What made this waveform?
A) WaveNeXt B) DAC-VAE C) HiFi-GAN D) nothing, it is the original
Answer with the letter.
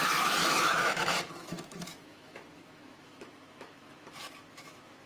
B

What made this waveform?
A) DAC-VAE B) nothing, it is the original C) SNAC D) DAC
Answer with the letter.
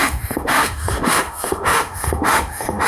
A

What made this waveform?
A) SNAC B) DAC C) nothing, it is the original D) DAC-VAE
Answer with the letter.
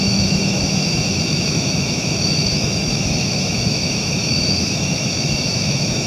D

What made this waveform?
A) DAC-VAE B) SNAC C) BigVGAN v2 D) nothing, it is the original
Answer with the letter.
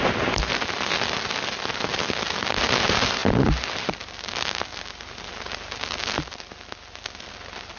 D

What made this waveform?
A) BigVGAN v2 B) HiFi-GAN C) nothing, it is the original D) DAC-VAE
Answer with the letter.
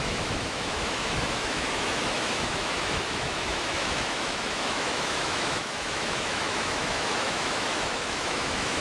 D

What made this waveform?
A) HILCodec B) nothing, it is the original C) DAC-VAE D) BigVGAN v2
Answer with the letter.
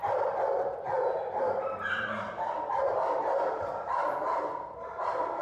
B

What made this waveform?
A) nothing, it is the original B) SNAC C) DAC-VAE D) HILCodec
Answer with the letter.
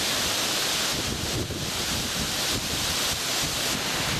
A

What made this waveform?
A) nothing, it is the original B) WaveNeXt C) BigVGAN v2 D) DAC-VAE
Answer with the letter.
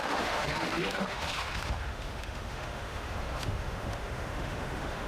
D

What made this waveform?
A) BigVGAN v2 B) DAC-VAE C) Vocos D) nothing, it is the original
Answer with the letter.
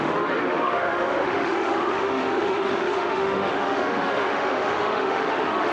B